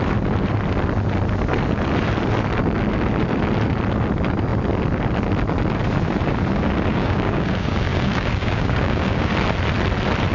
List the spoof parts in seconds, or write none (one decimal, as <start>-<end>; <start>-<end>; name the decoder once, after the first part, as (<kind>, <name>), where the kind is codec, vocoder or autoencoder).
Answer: 6.9-9.3 (codec, DAC)

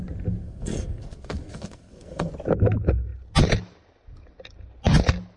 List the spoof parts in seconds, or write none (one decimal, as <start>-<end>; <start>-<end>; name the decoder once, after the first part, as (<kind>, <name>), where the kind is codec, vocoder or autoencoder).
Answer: 0.4-2.3 (codec, SNAC)

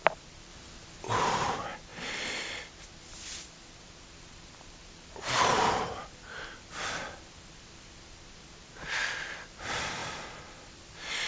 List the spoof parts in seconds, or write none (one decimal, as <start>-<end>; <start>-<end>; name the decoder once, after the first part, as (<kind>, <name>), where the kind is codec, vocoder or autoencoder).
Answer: 0.0-0.5 (vocoder, BigVGAN v2); 1.1-11.3

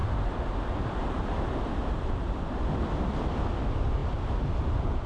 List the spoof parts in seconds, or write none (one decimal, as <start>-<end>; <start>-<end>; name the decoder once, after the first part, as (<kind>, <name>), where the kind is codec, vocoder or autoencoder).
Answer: none

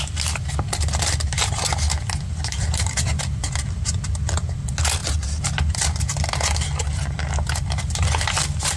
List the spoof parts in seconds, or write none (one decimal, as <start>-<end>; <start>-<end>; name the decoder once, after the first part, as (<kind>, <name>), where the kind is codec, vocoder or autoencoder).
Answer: 2.3-4.5 (vocoder, BigVGAN v2)

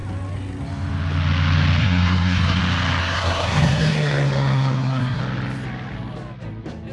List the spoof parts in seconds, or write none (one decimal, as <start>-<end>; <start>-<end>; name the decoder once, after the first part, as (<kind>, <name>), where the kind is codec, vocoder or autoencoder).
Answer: 1.8-2.6 (codec, SNAC); 3.0-5.2

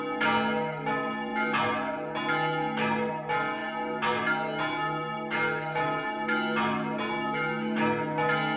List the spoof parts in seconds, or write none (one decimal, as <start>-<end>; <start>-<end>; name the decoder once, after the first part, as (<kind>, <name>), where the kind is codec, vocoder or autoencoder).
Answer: none